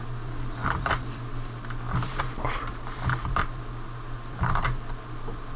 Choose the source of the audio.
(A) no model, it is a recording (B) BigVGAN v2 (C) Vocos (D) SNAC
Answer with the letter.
A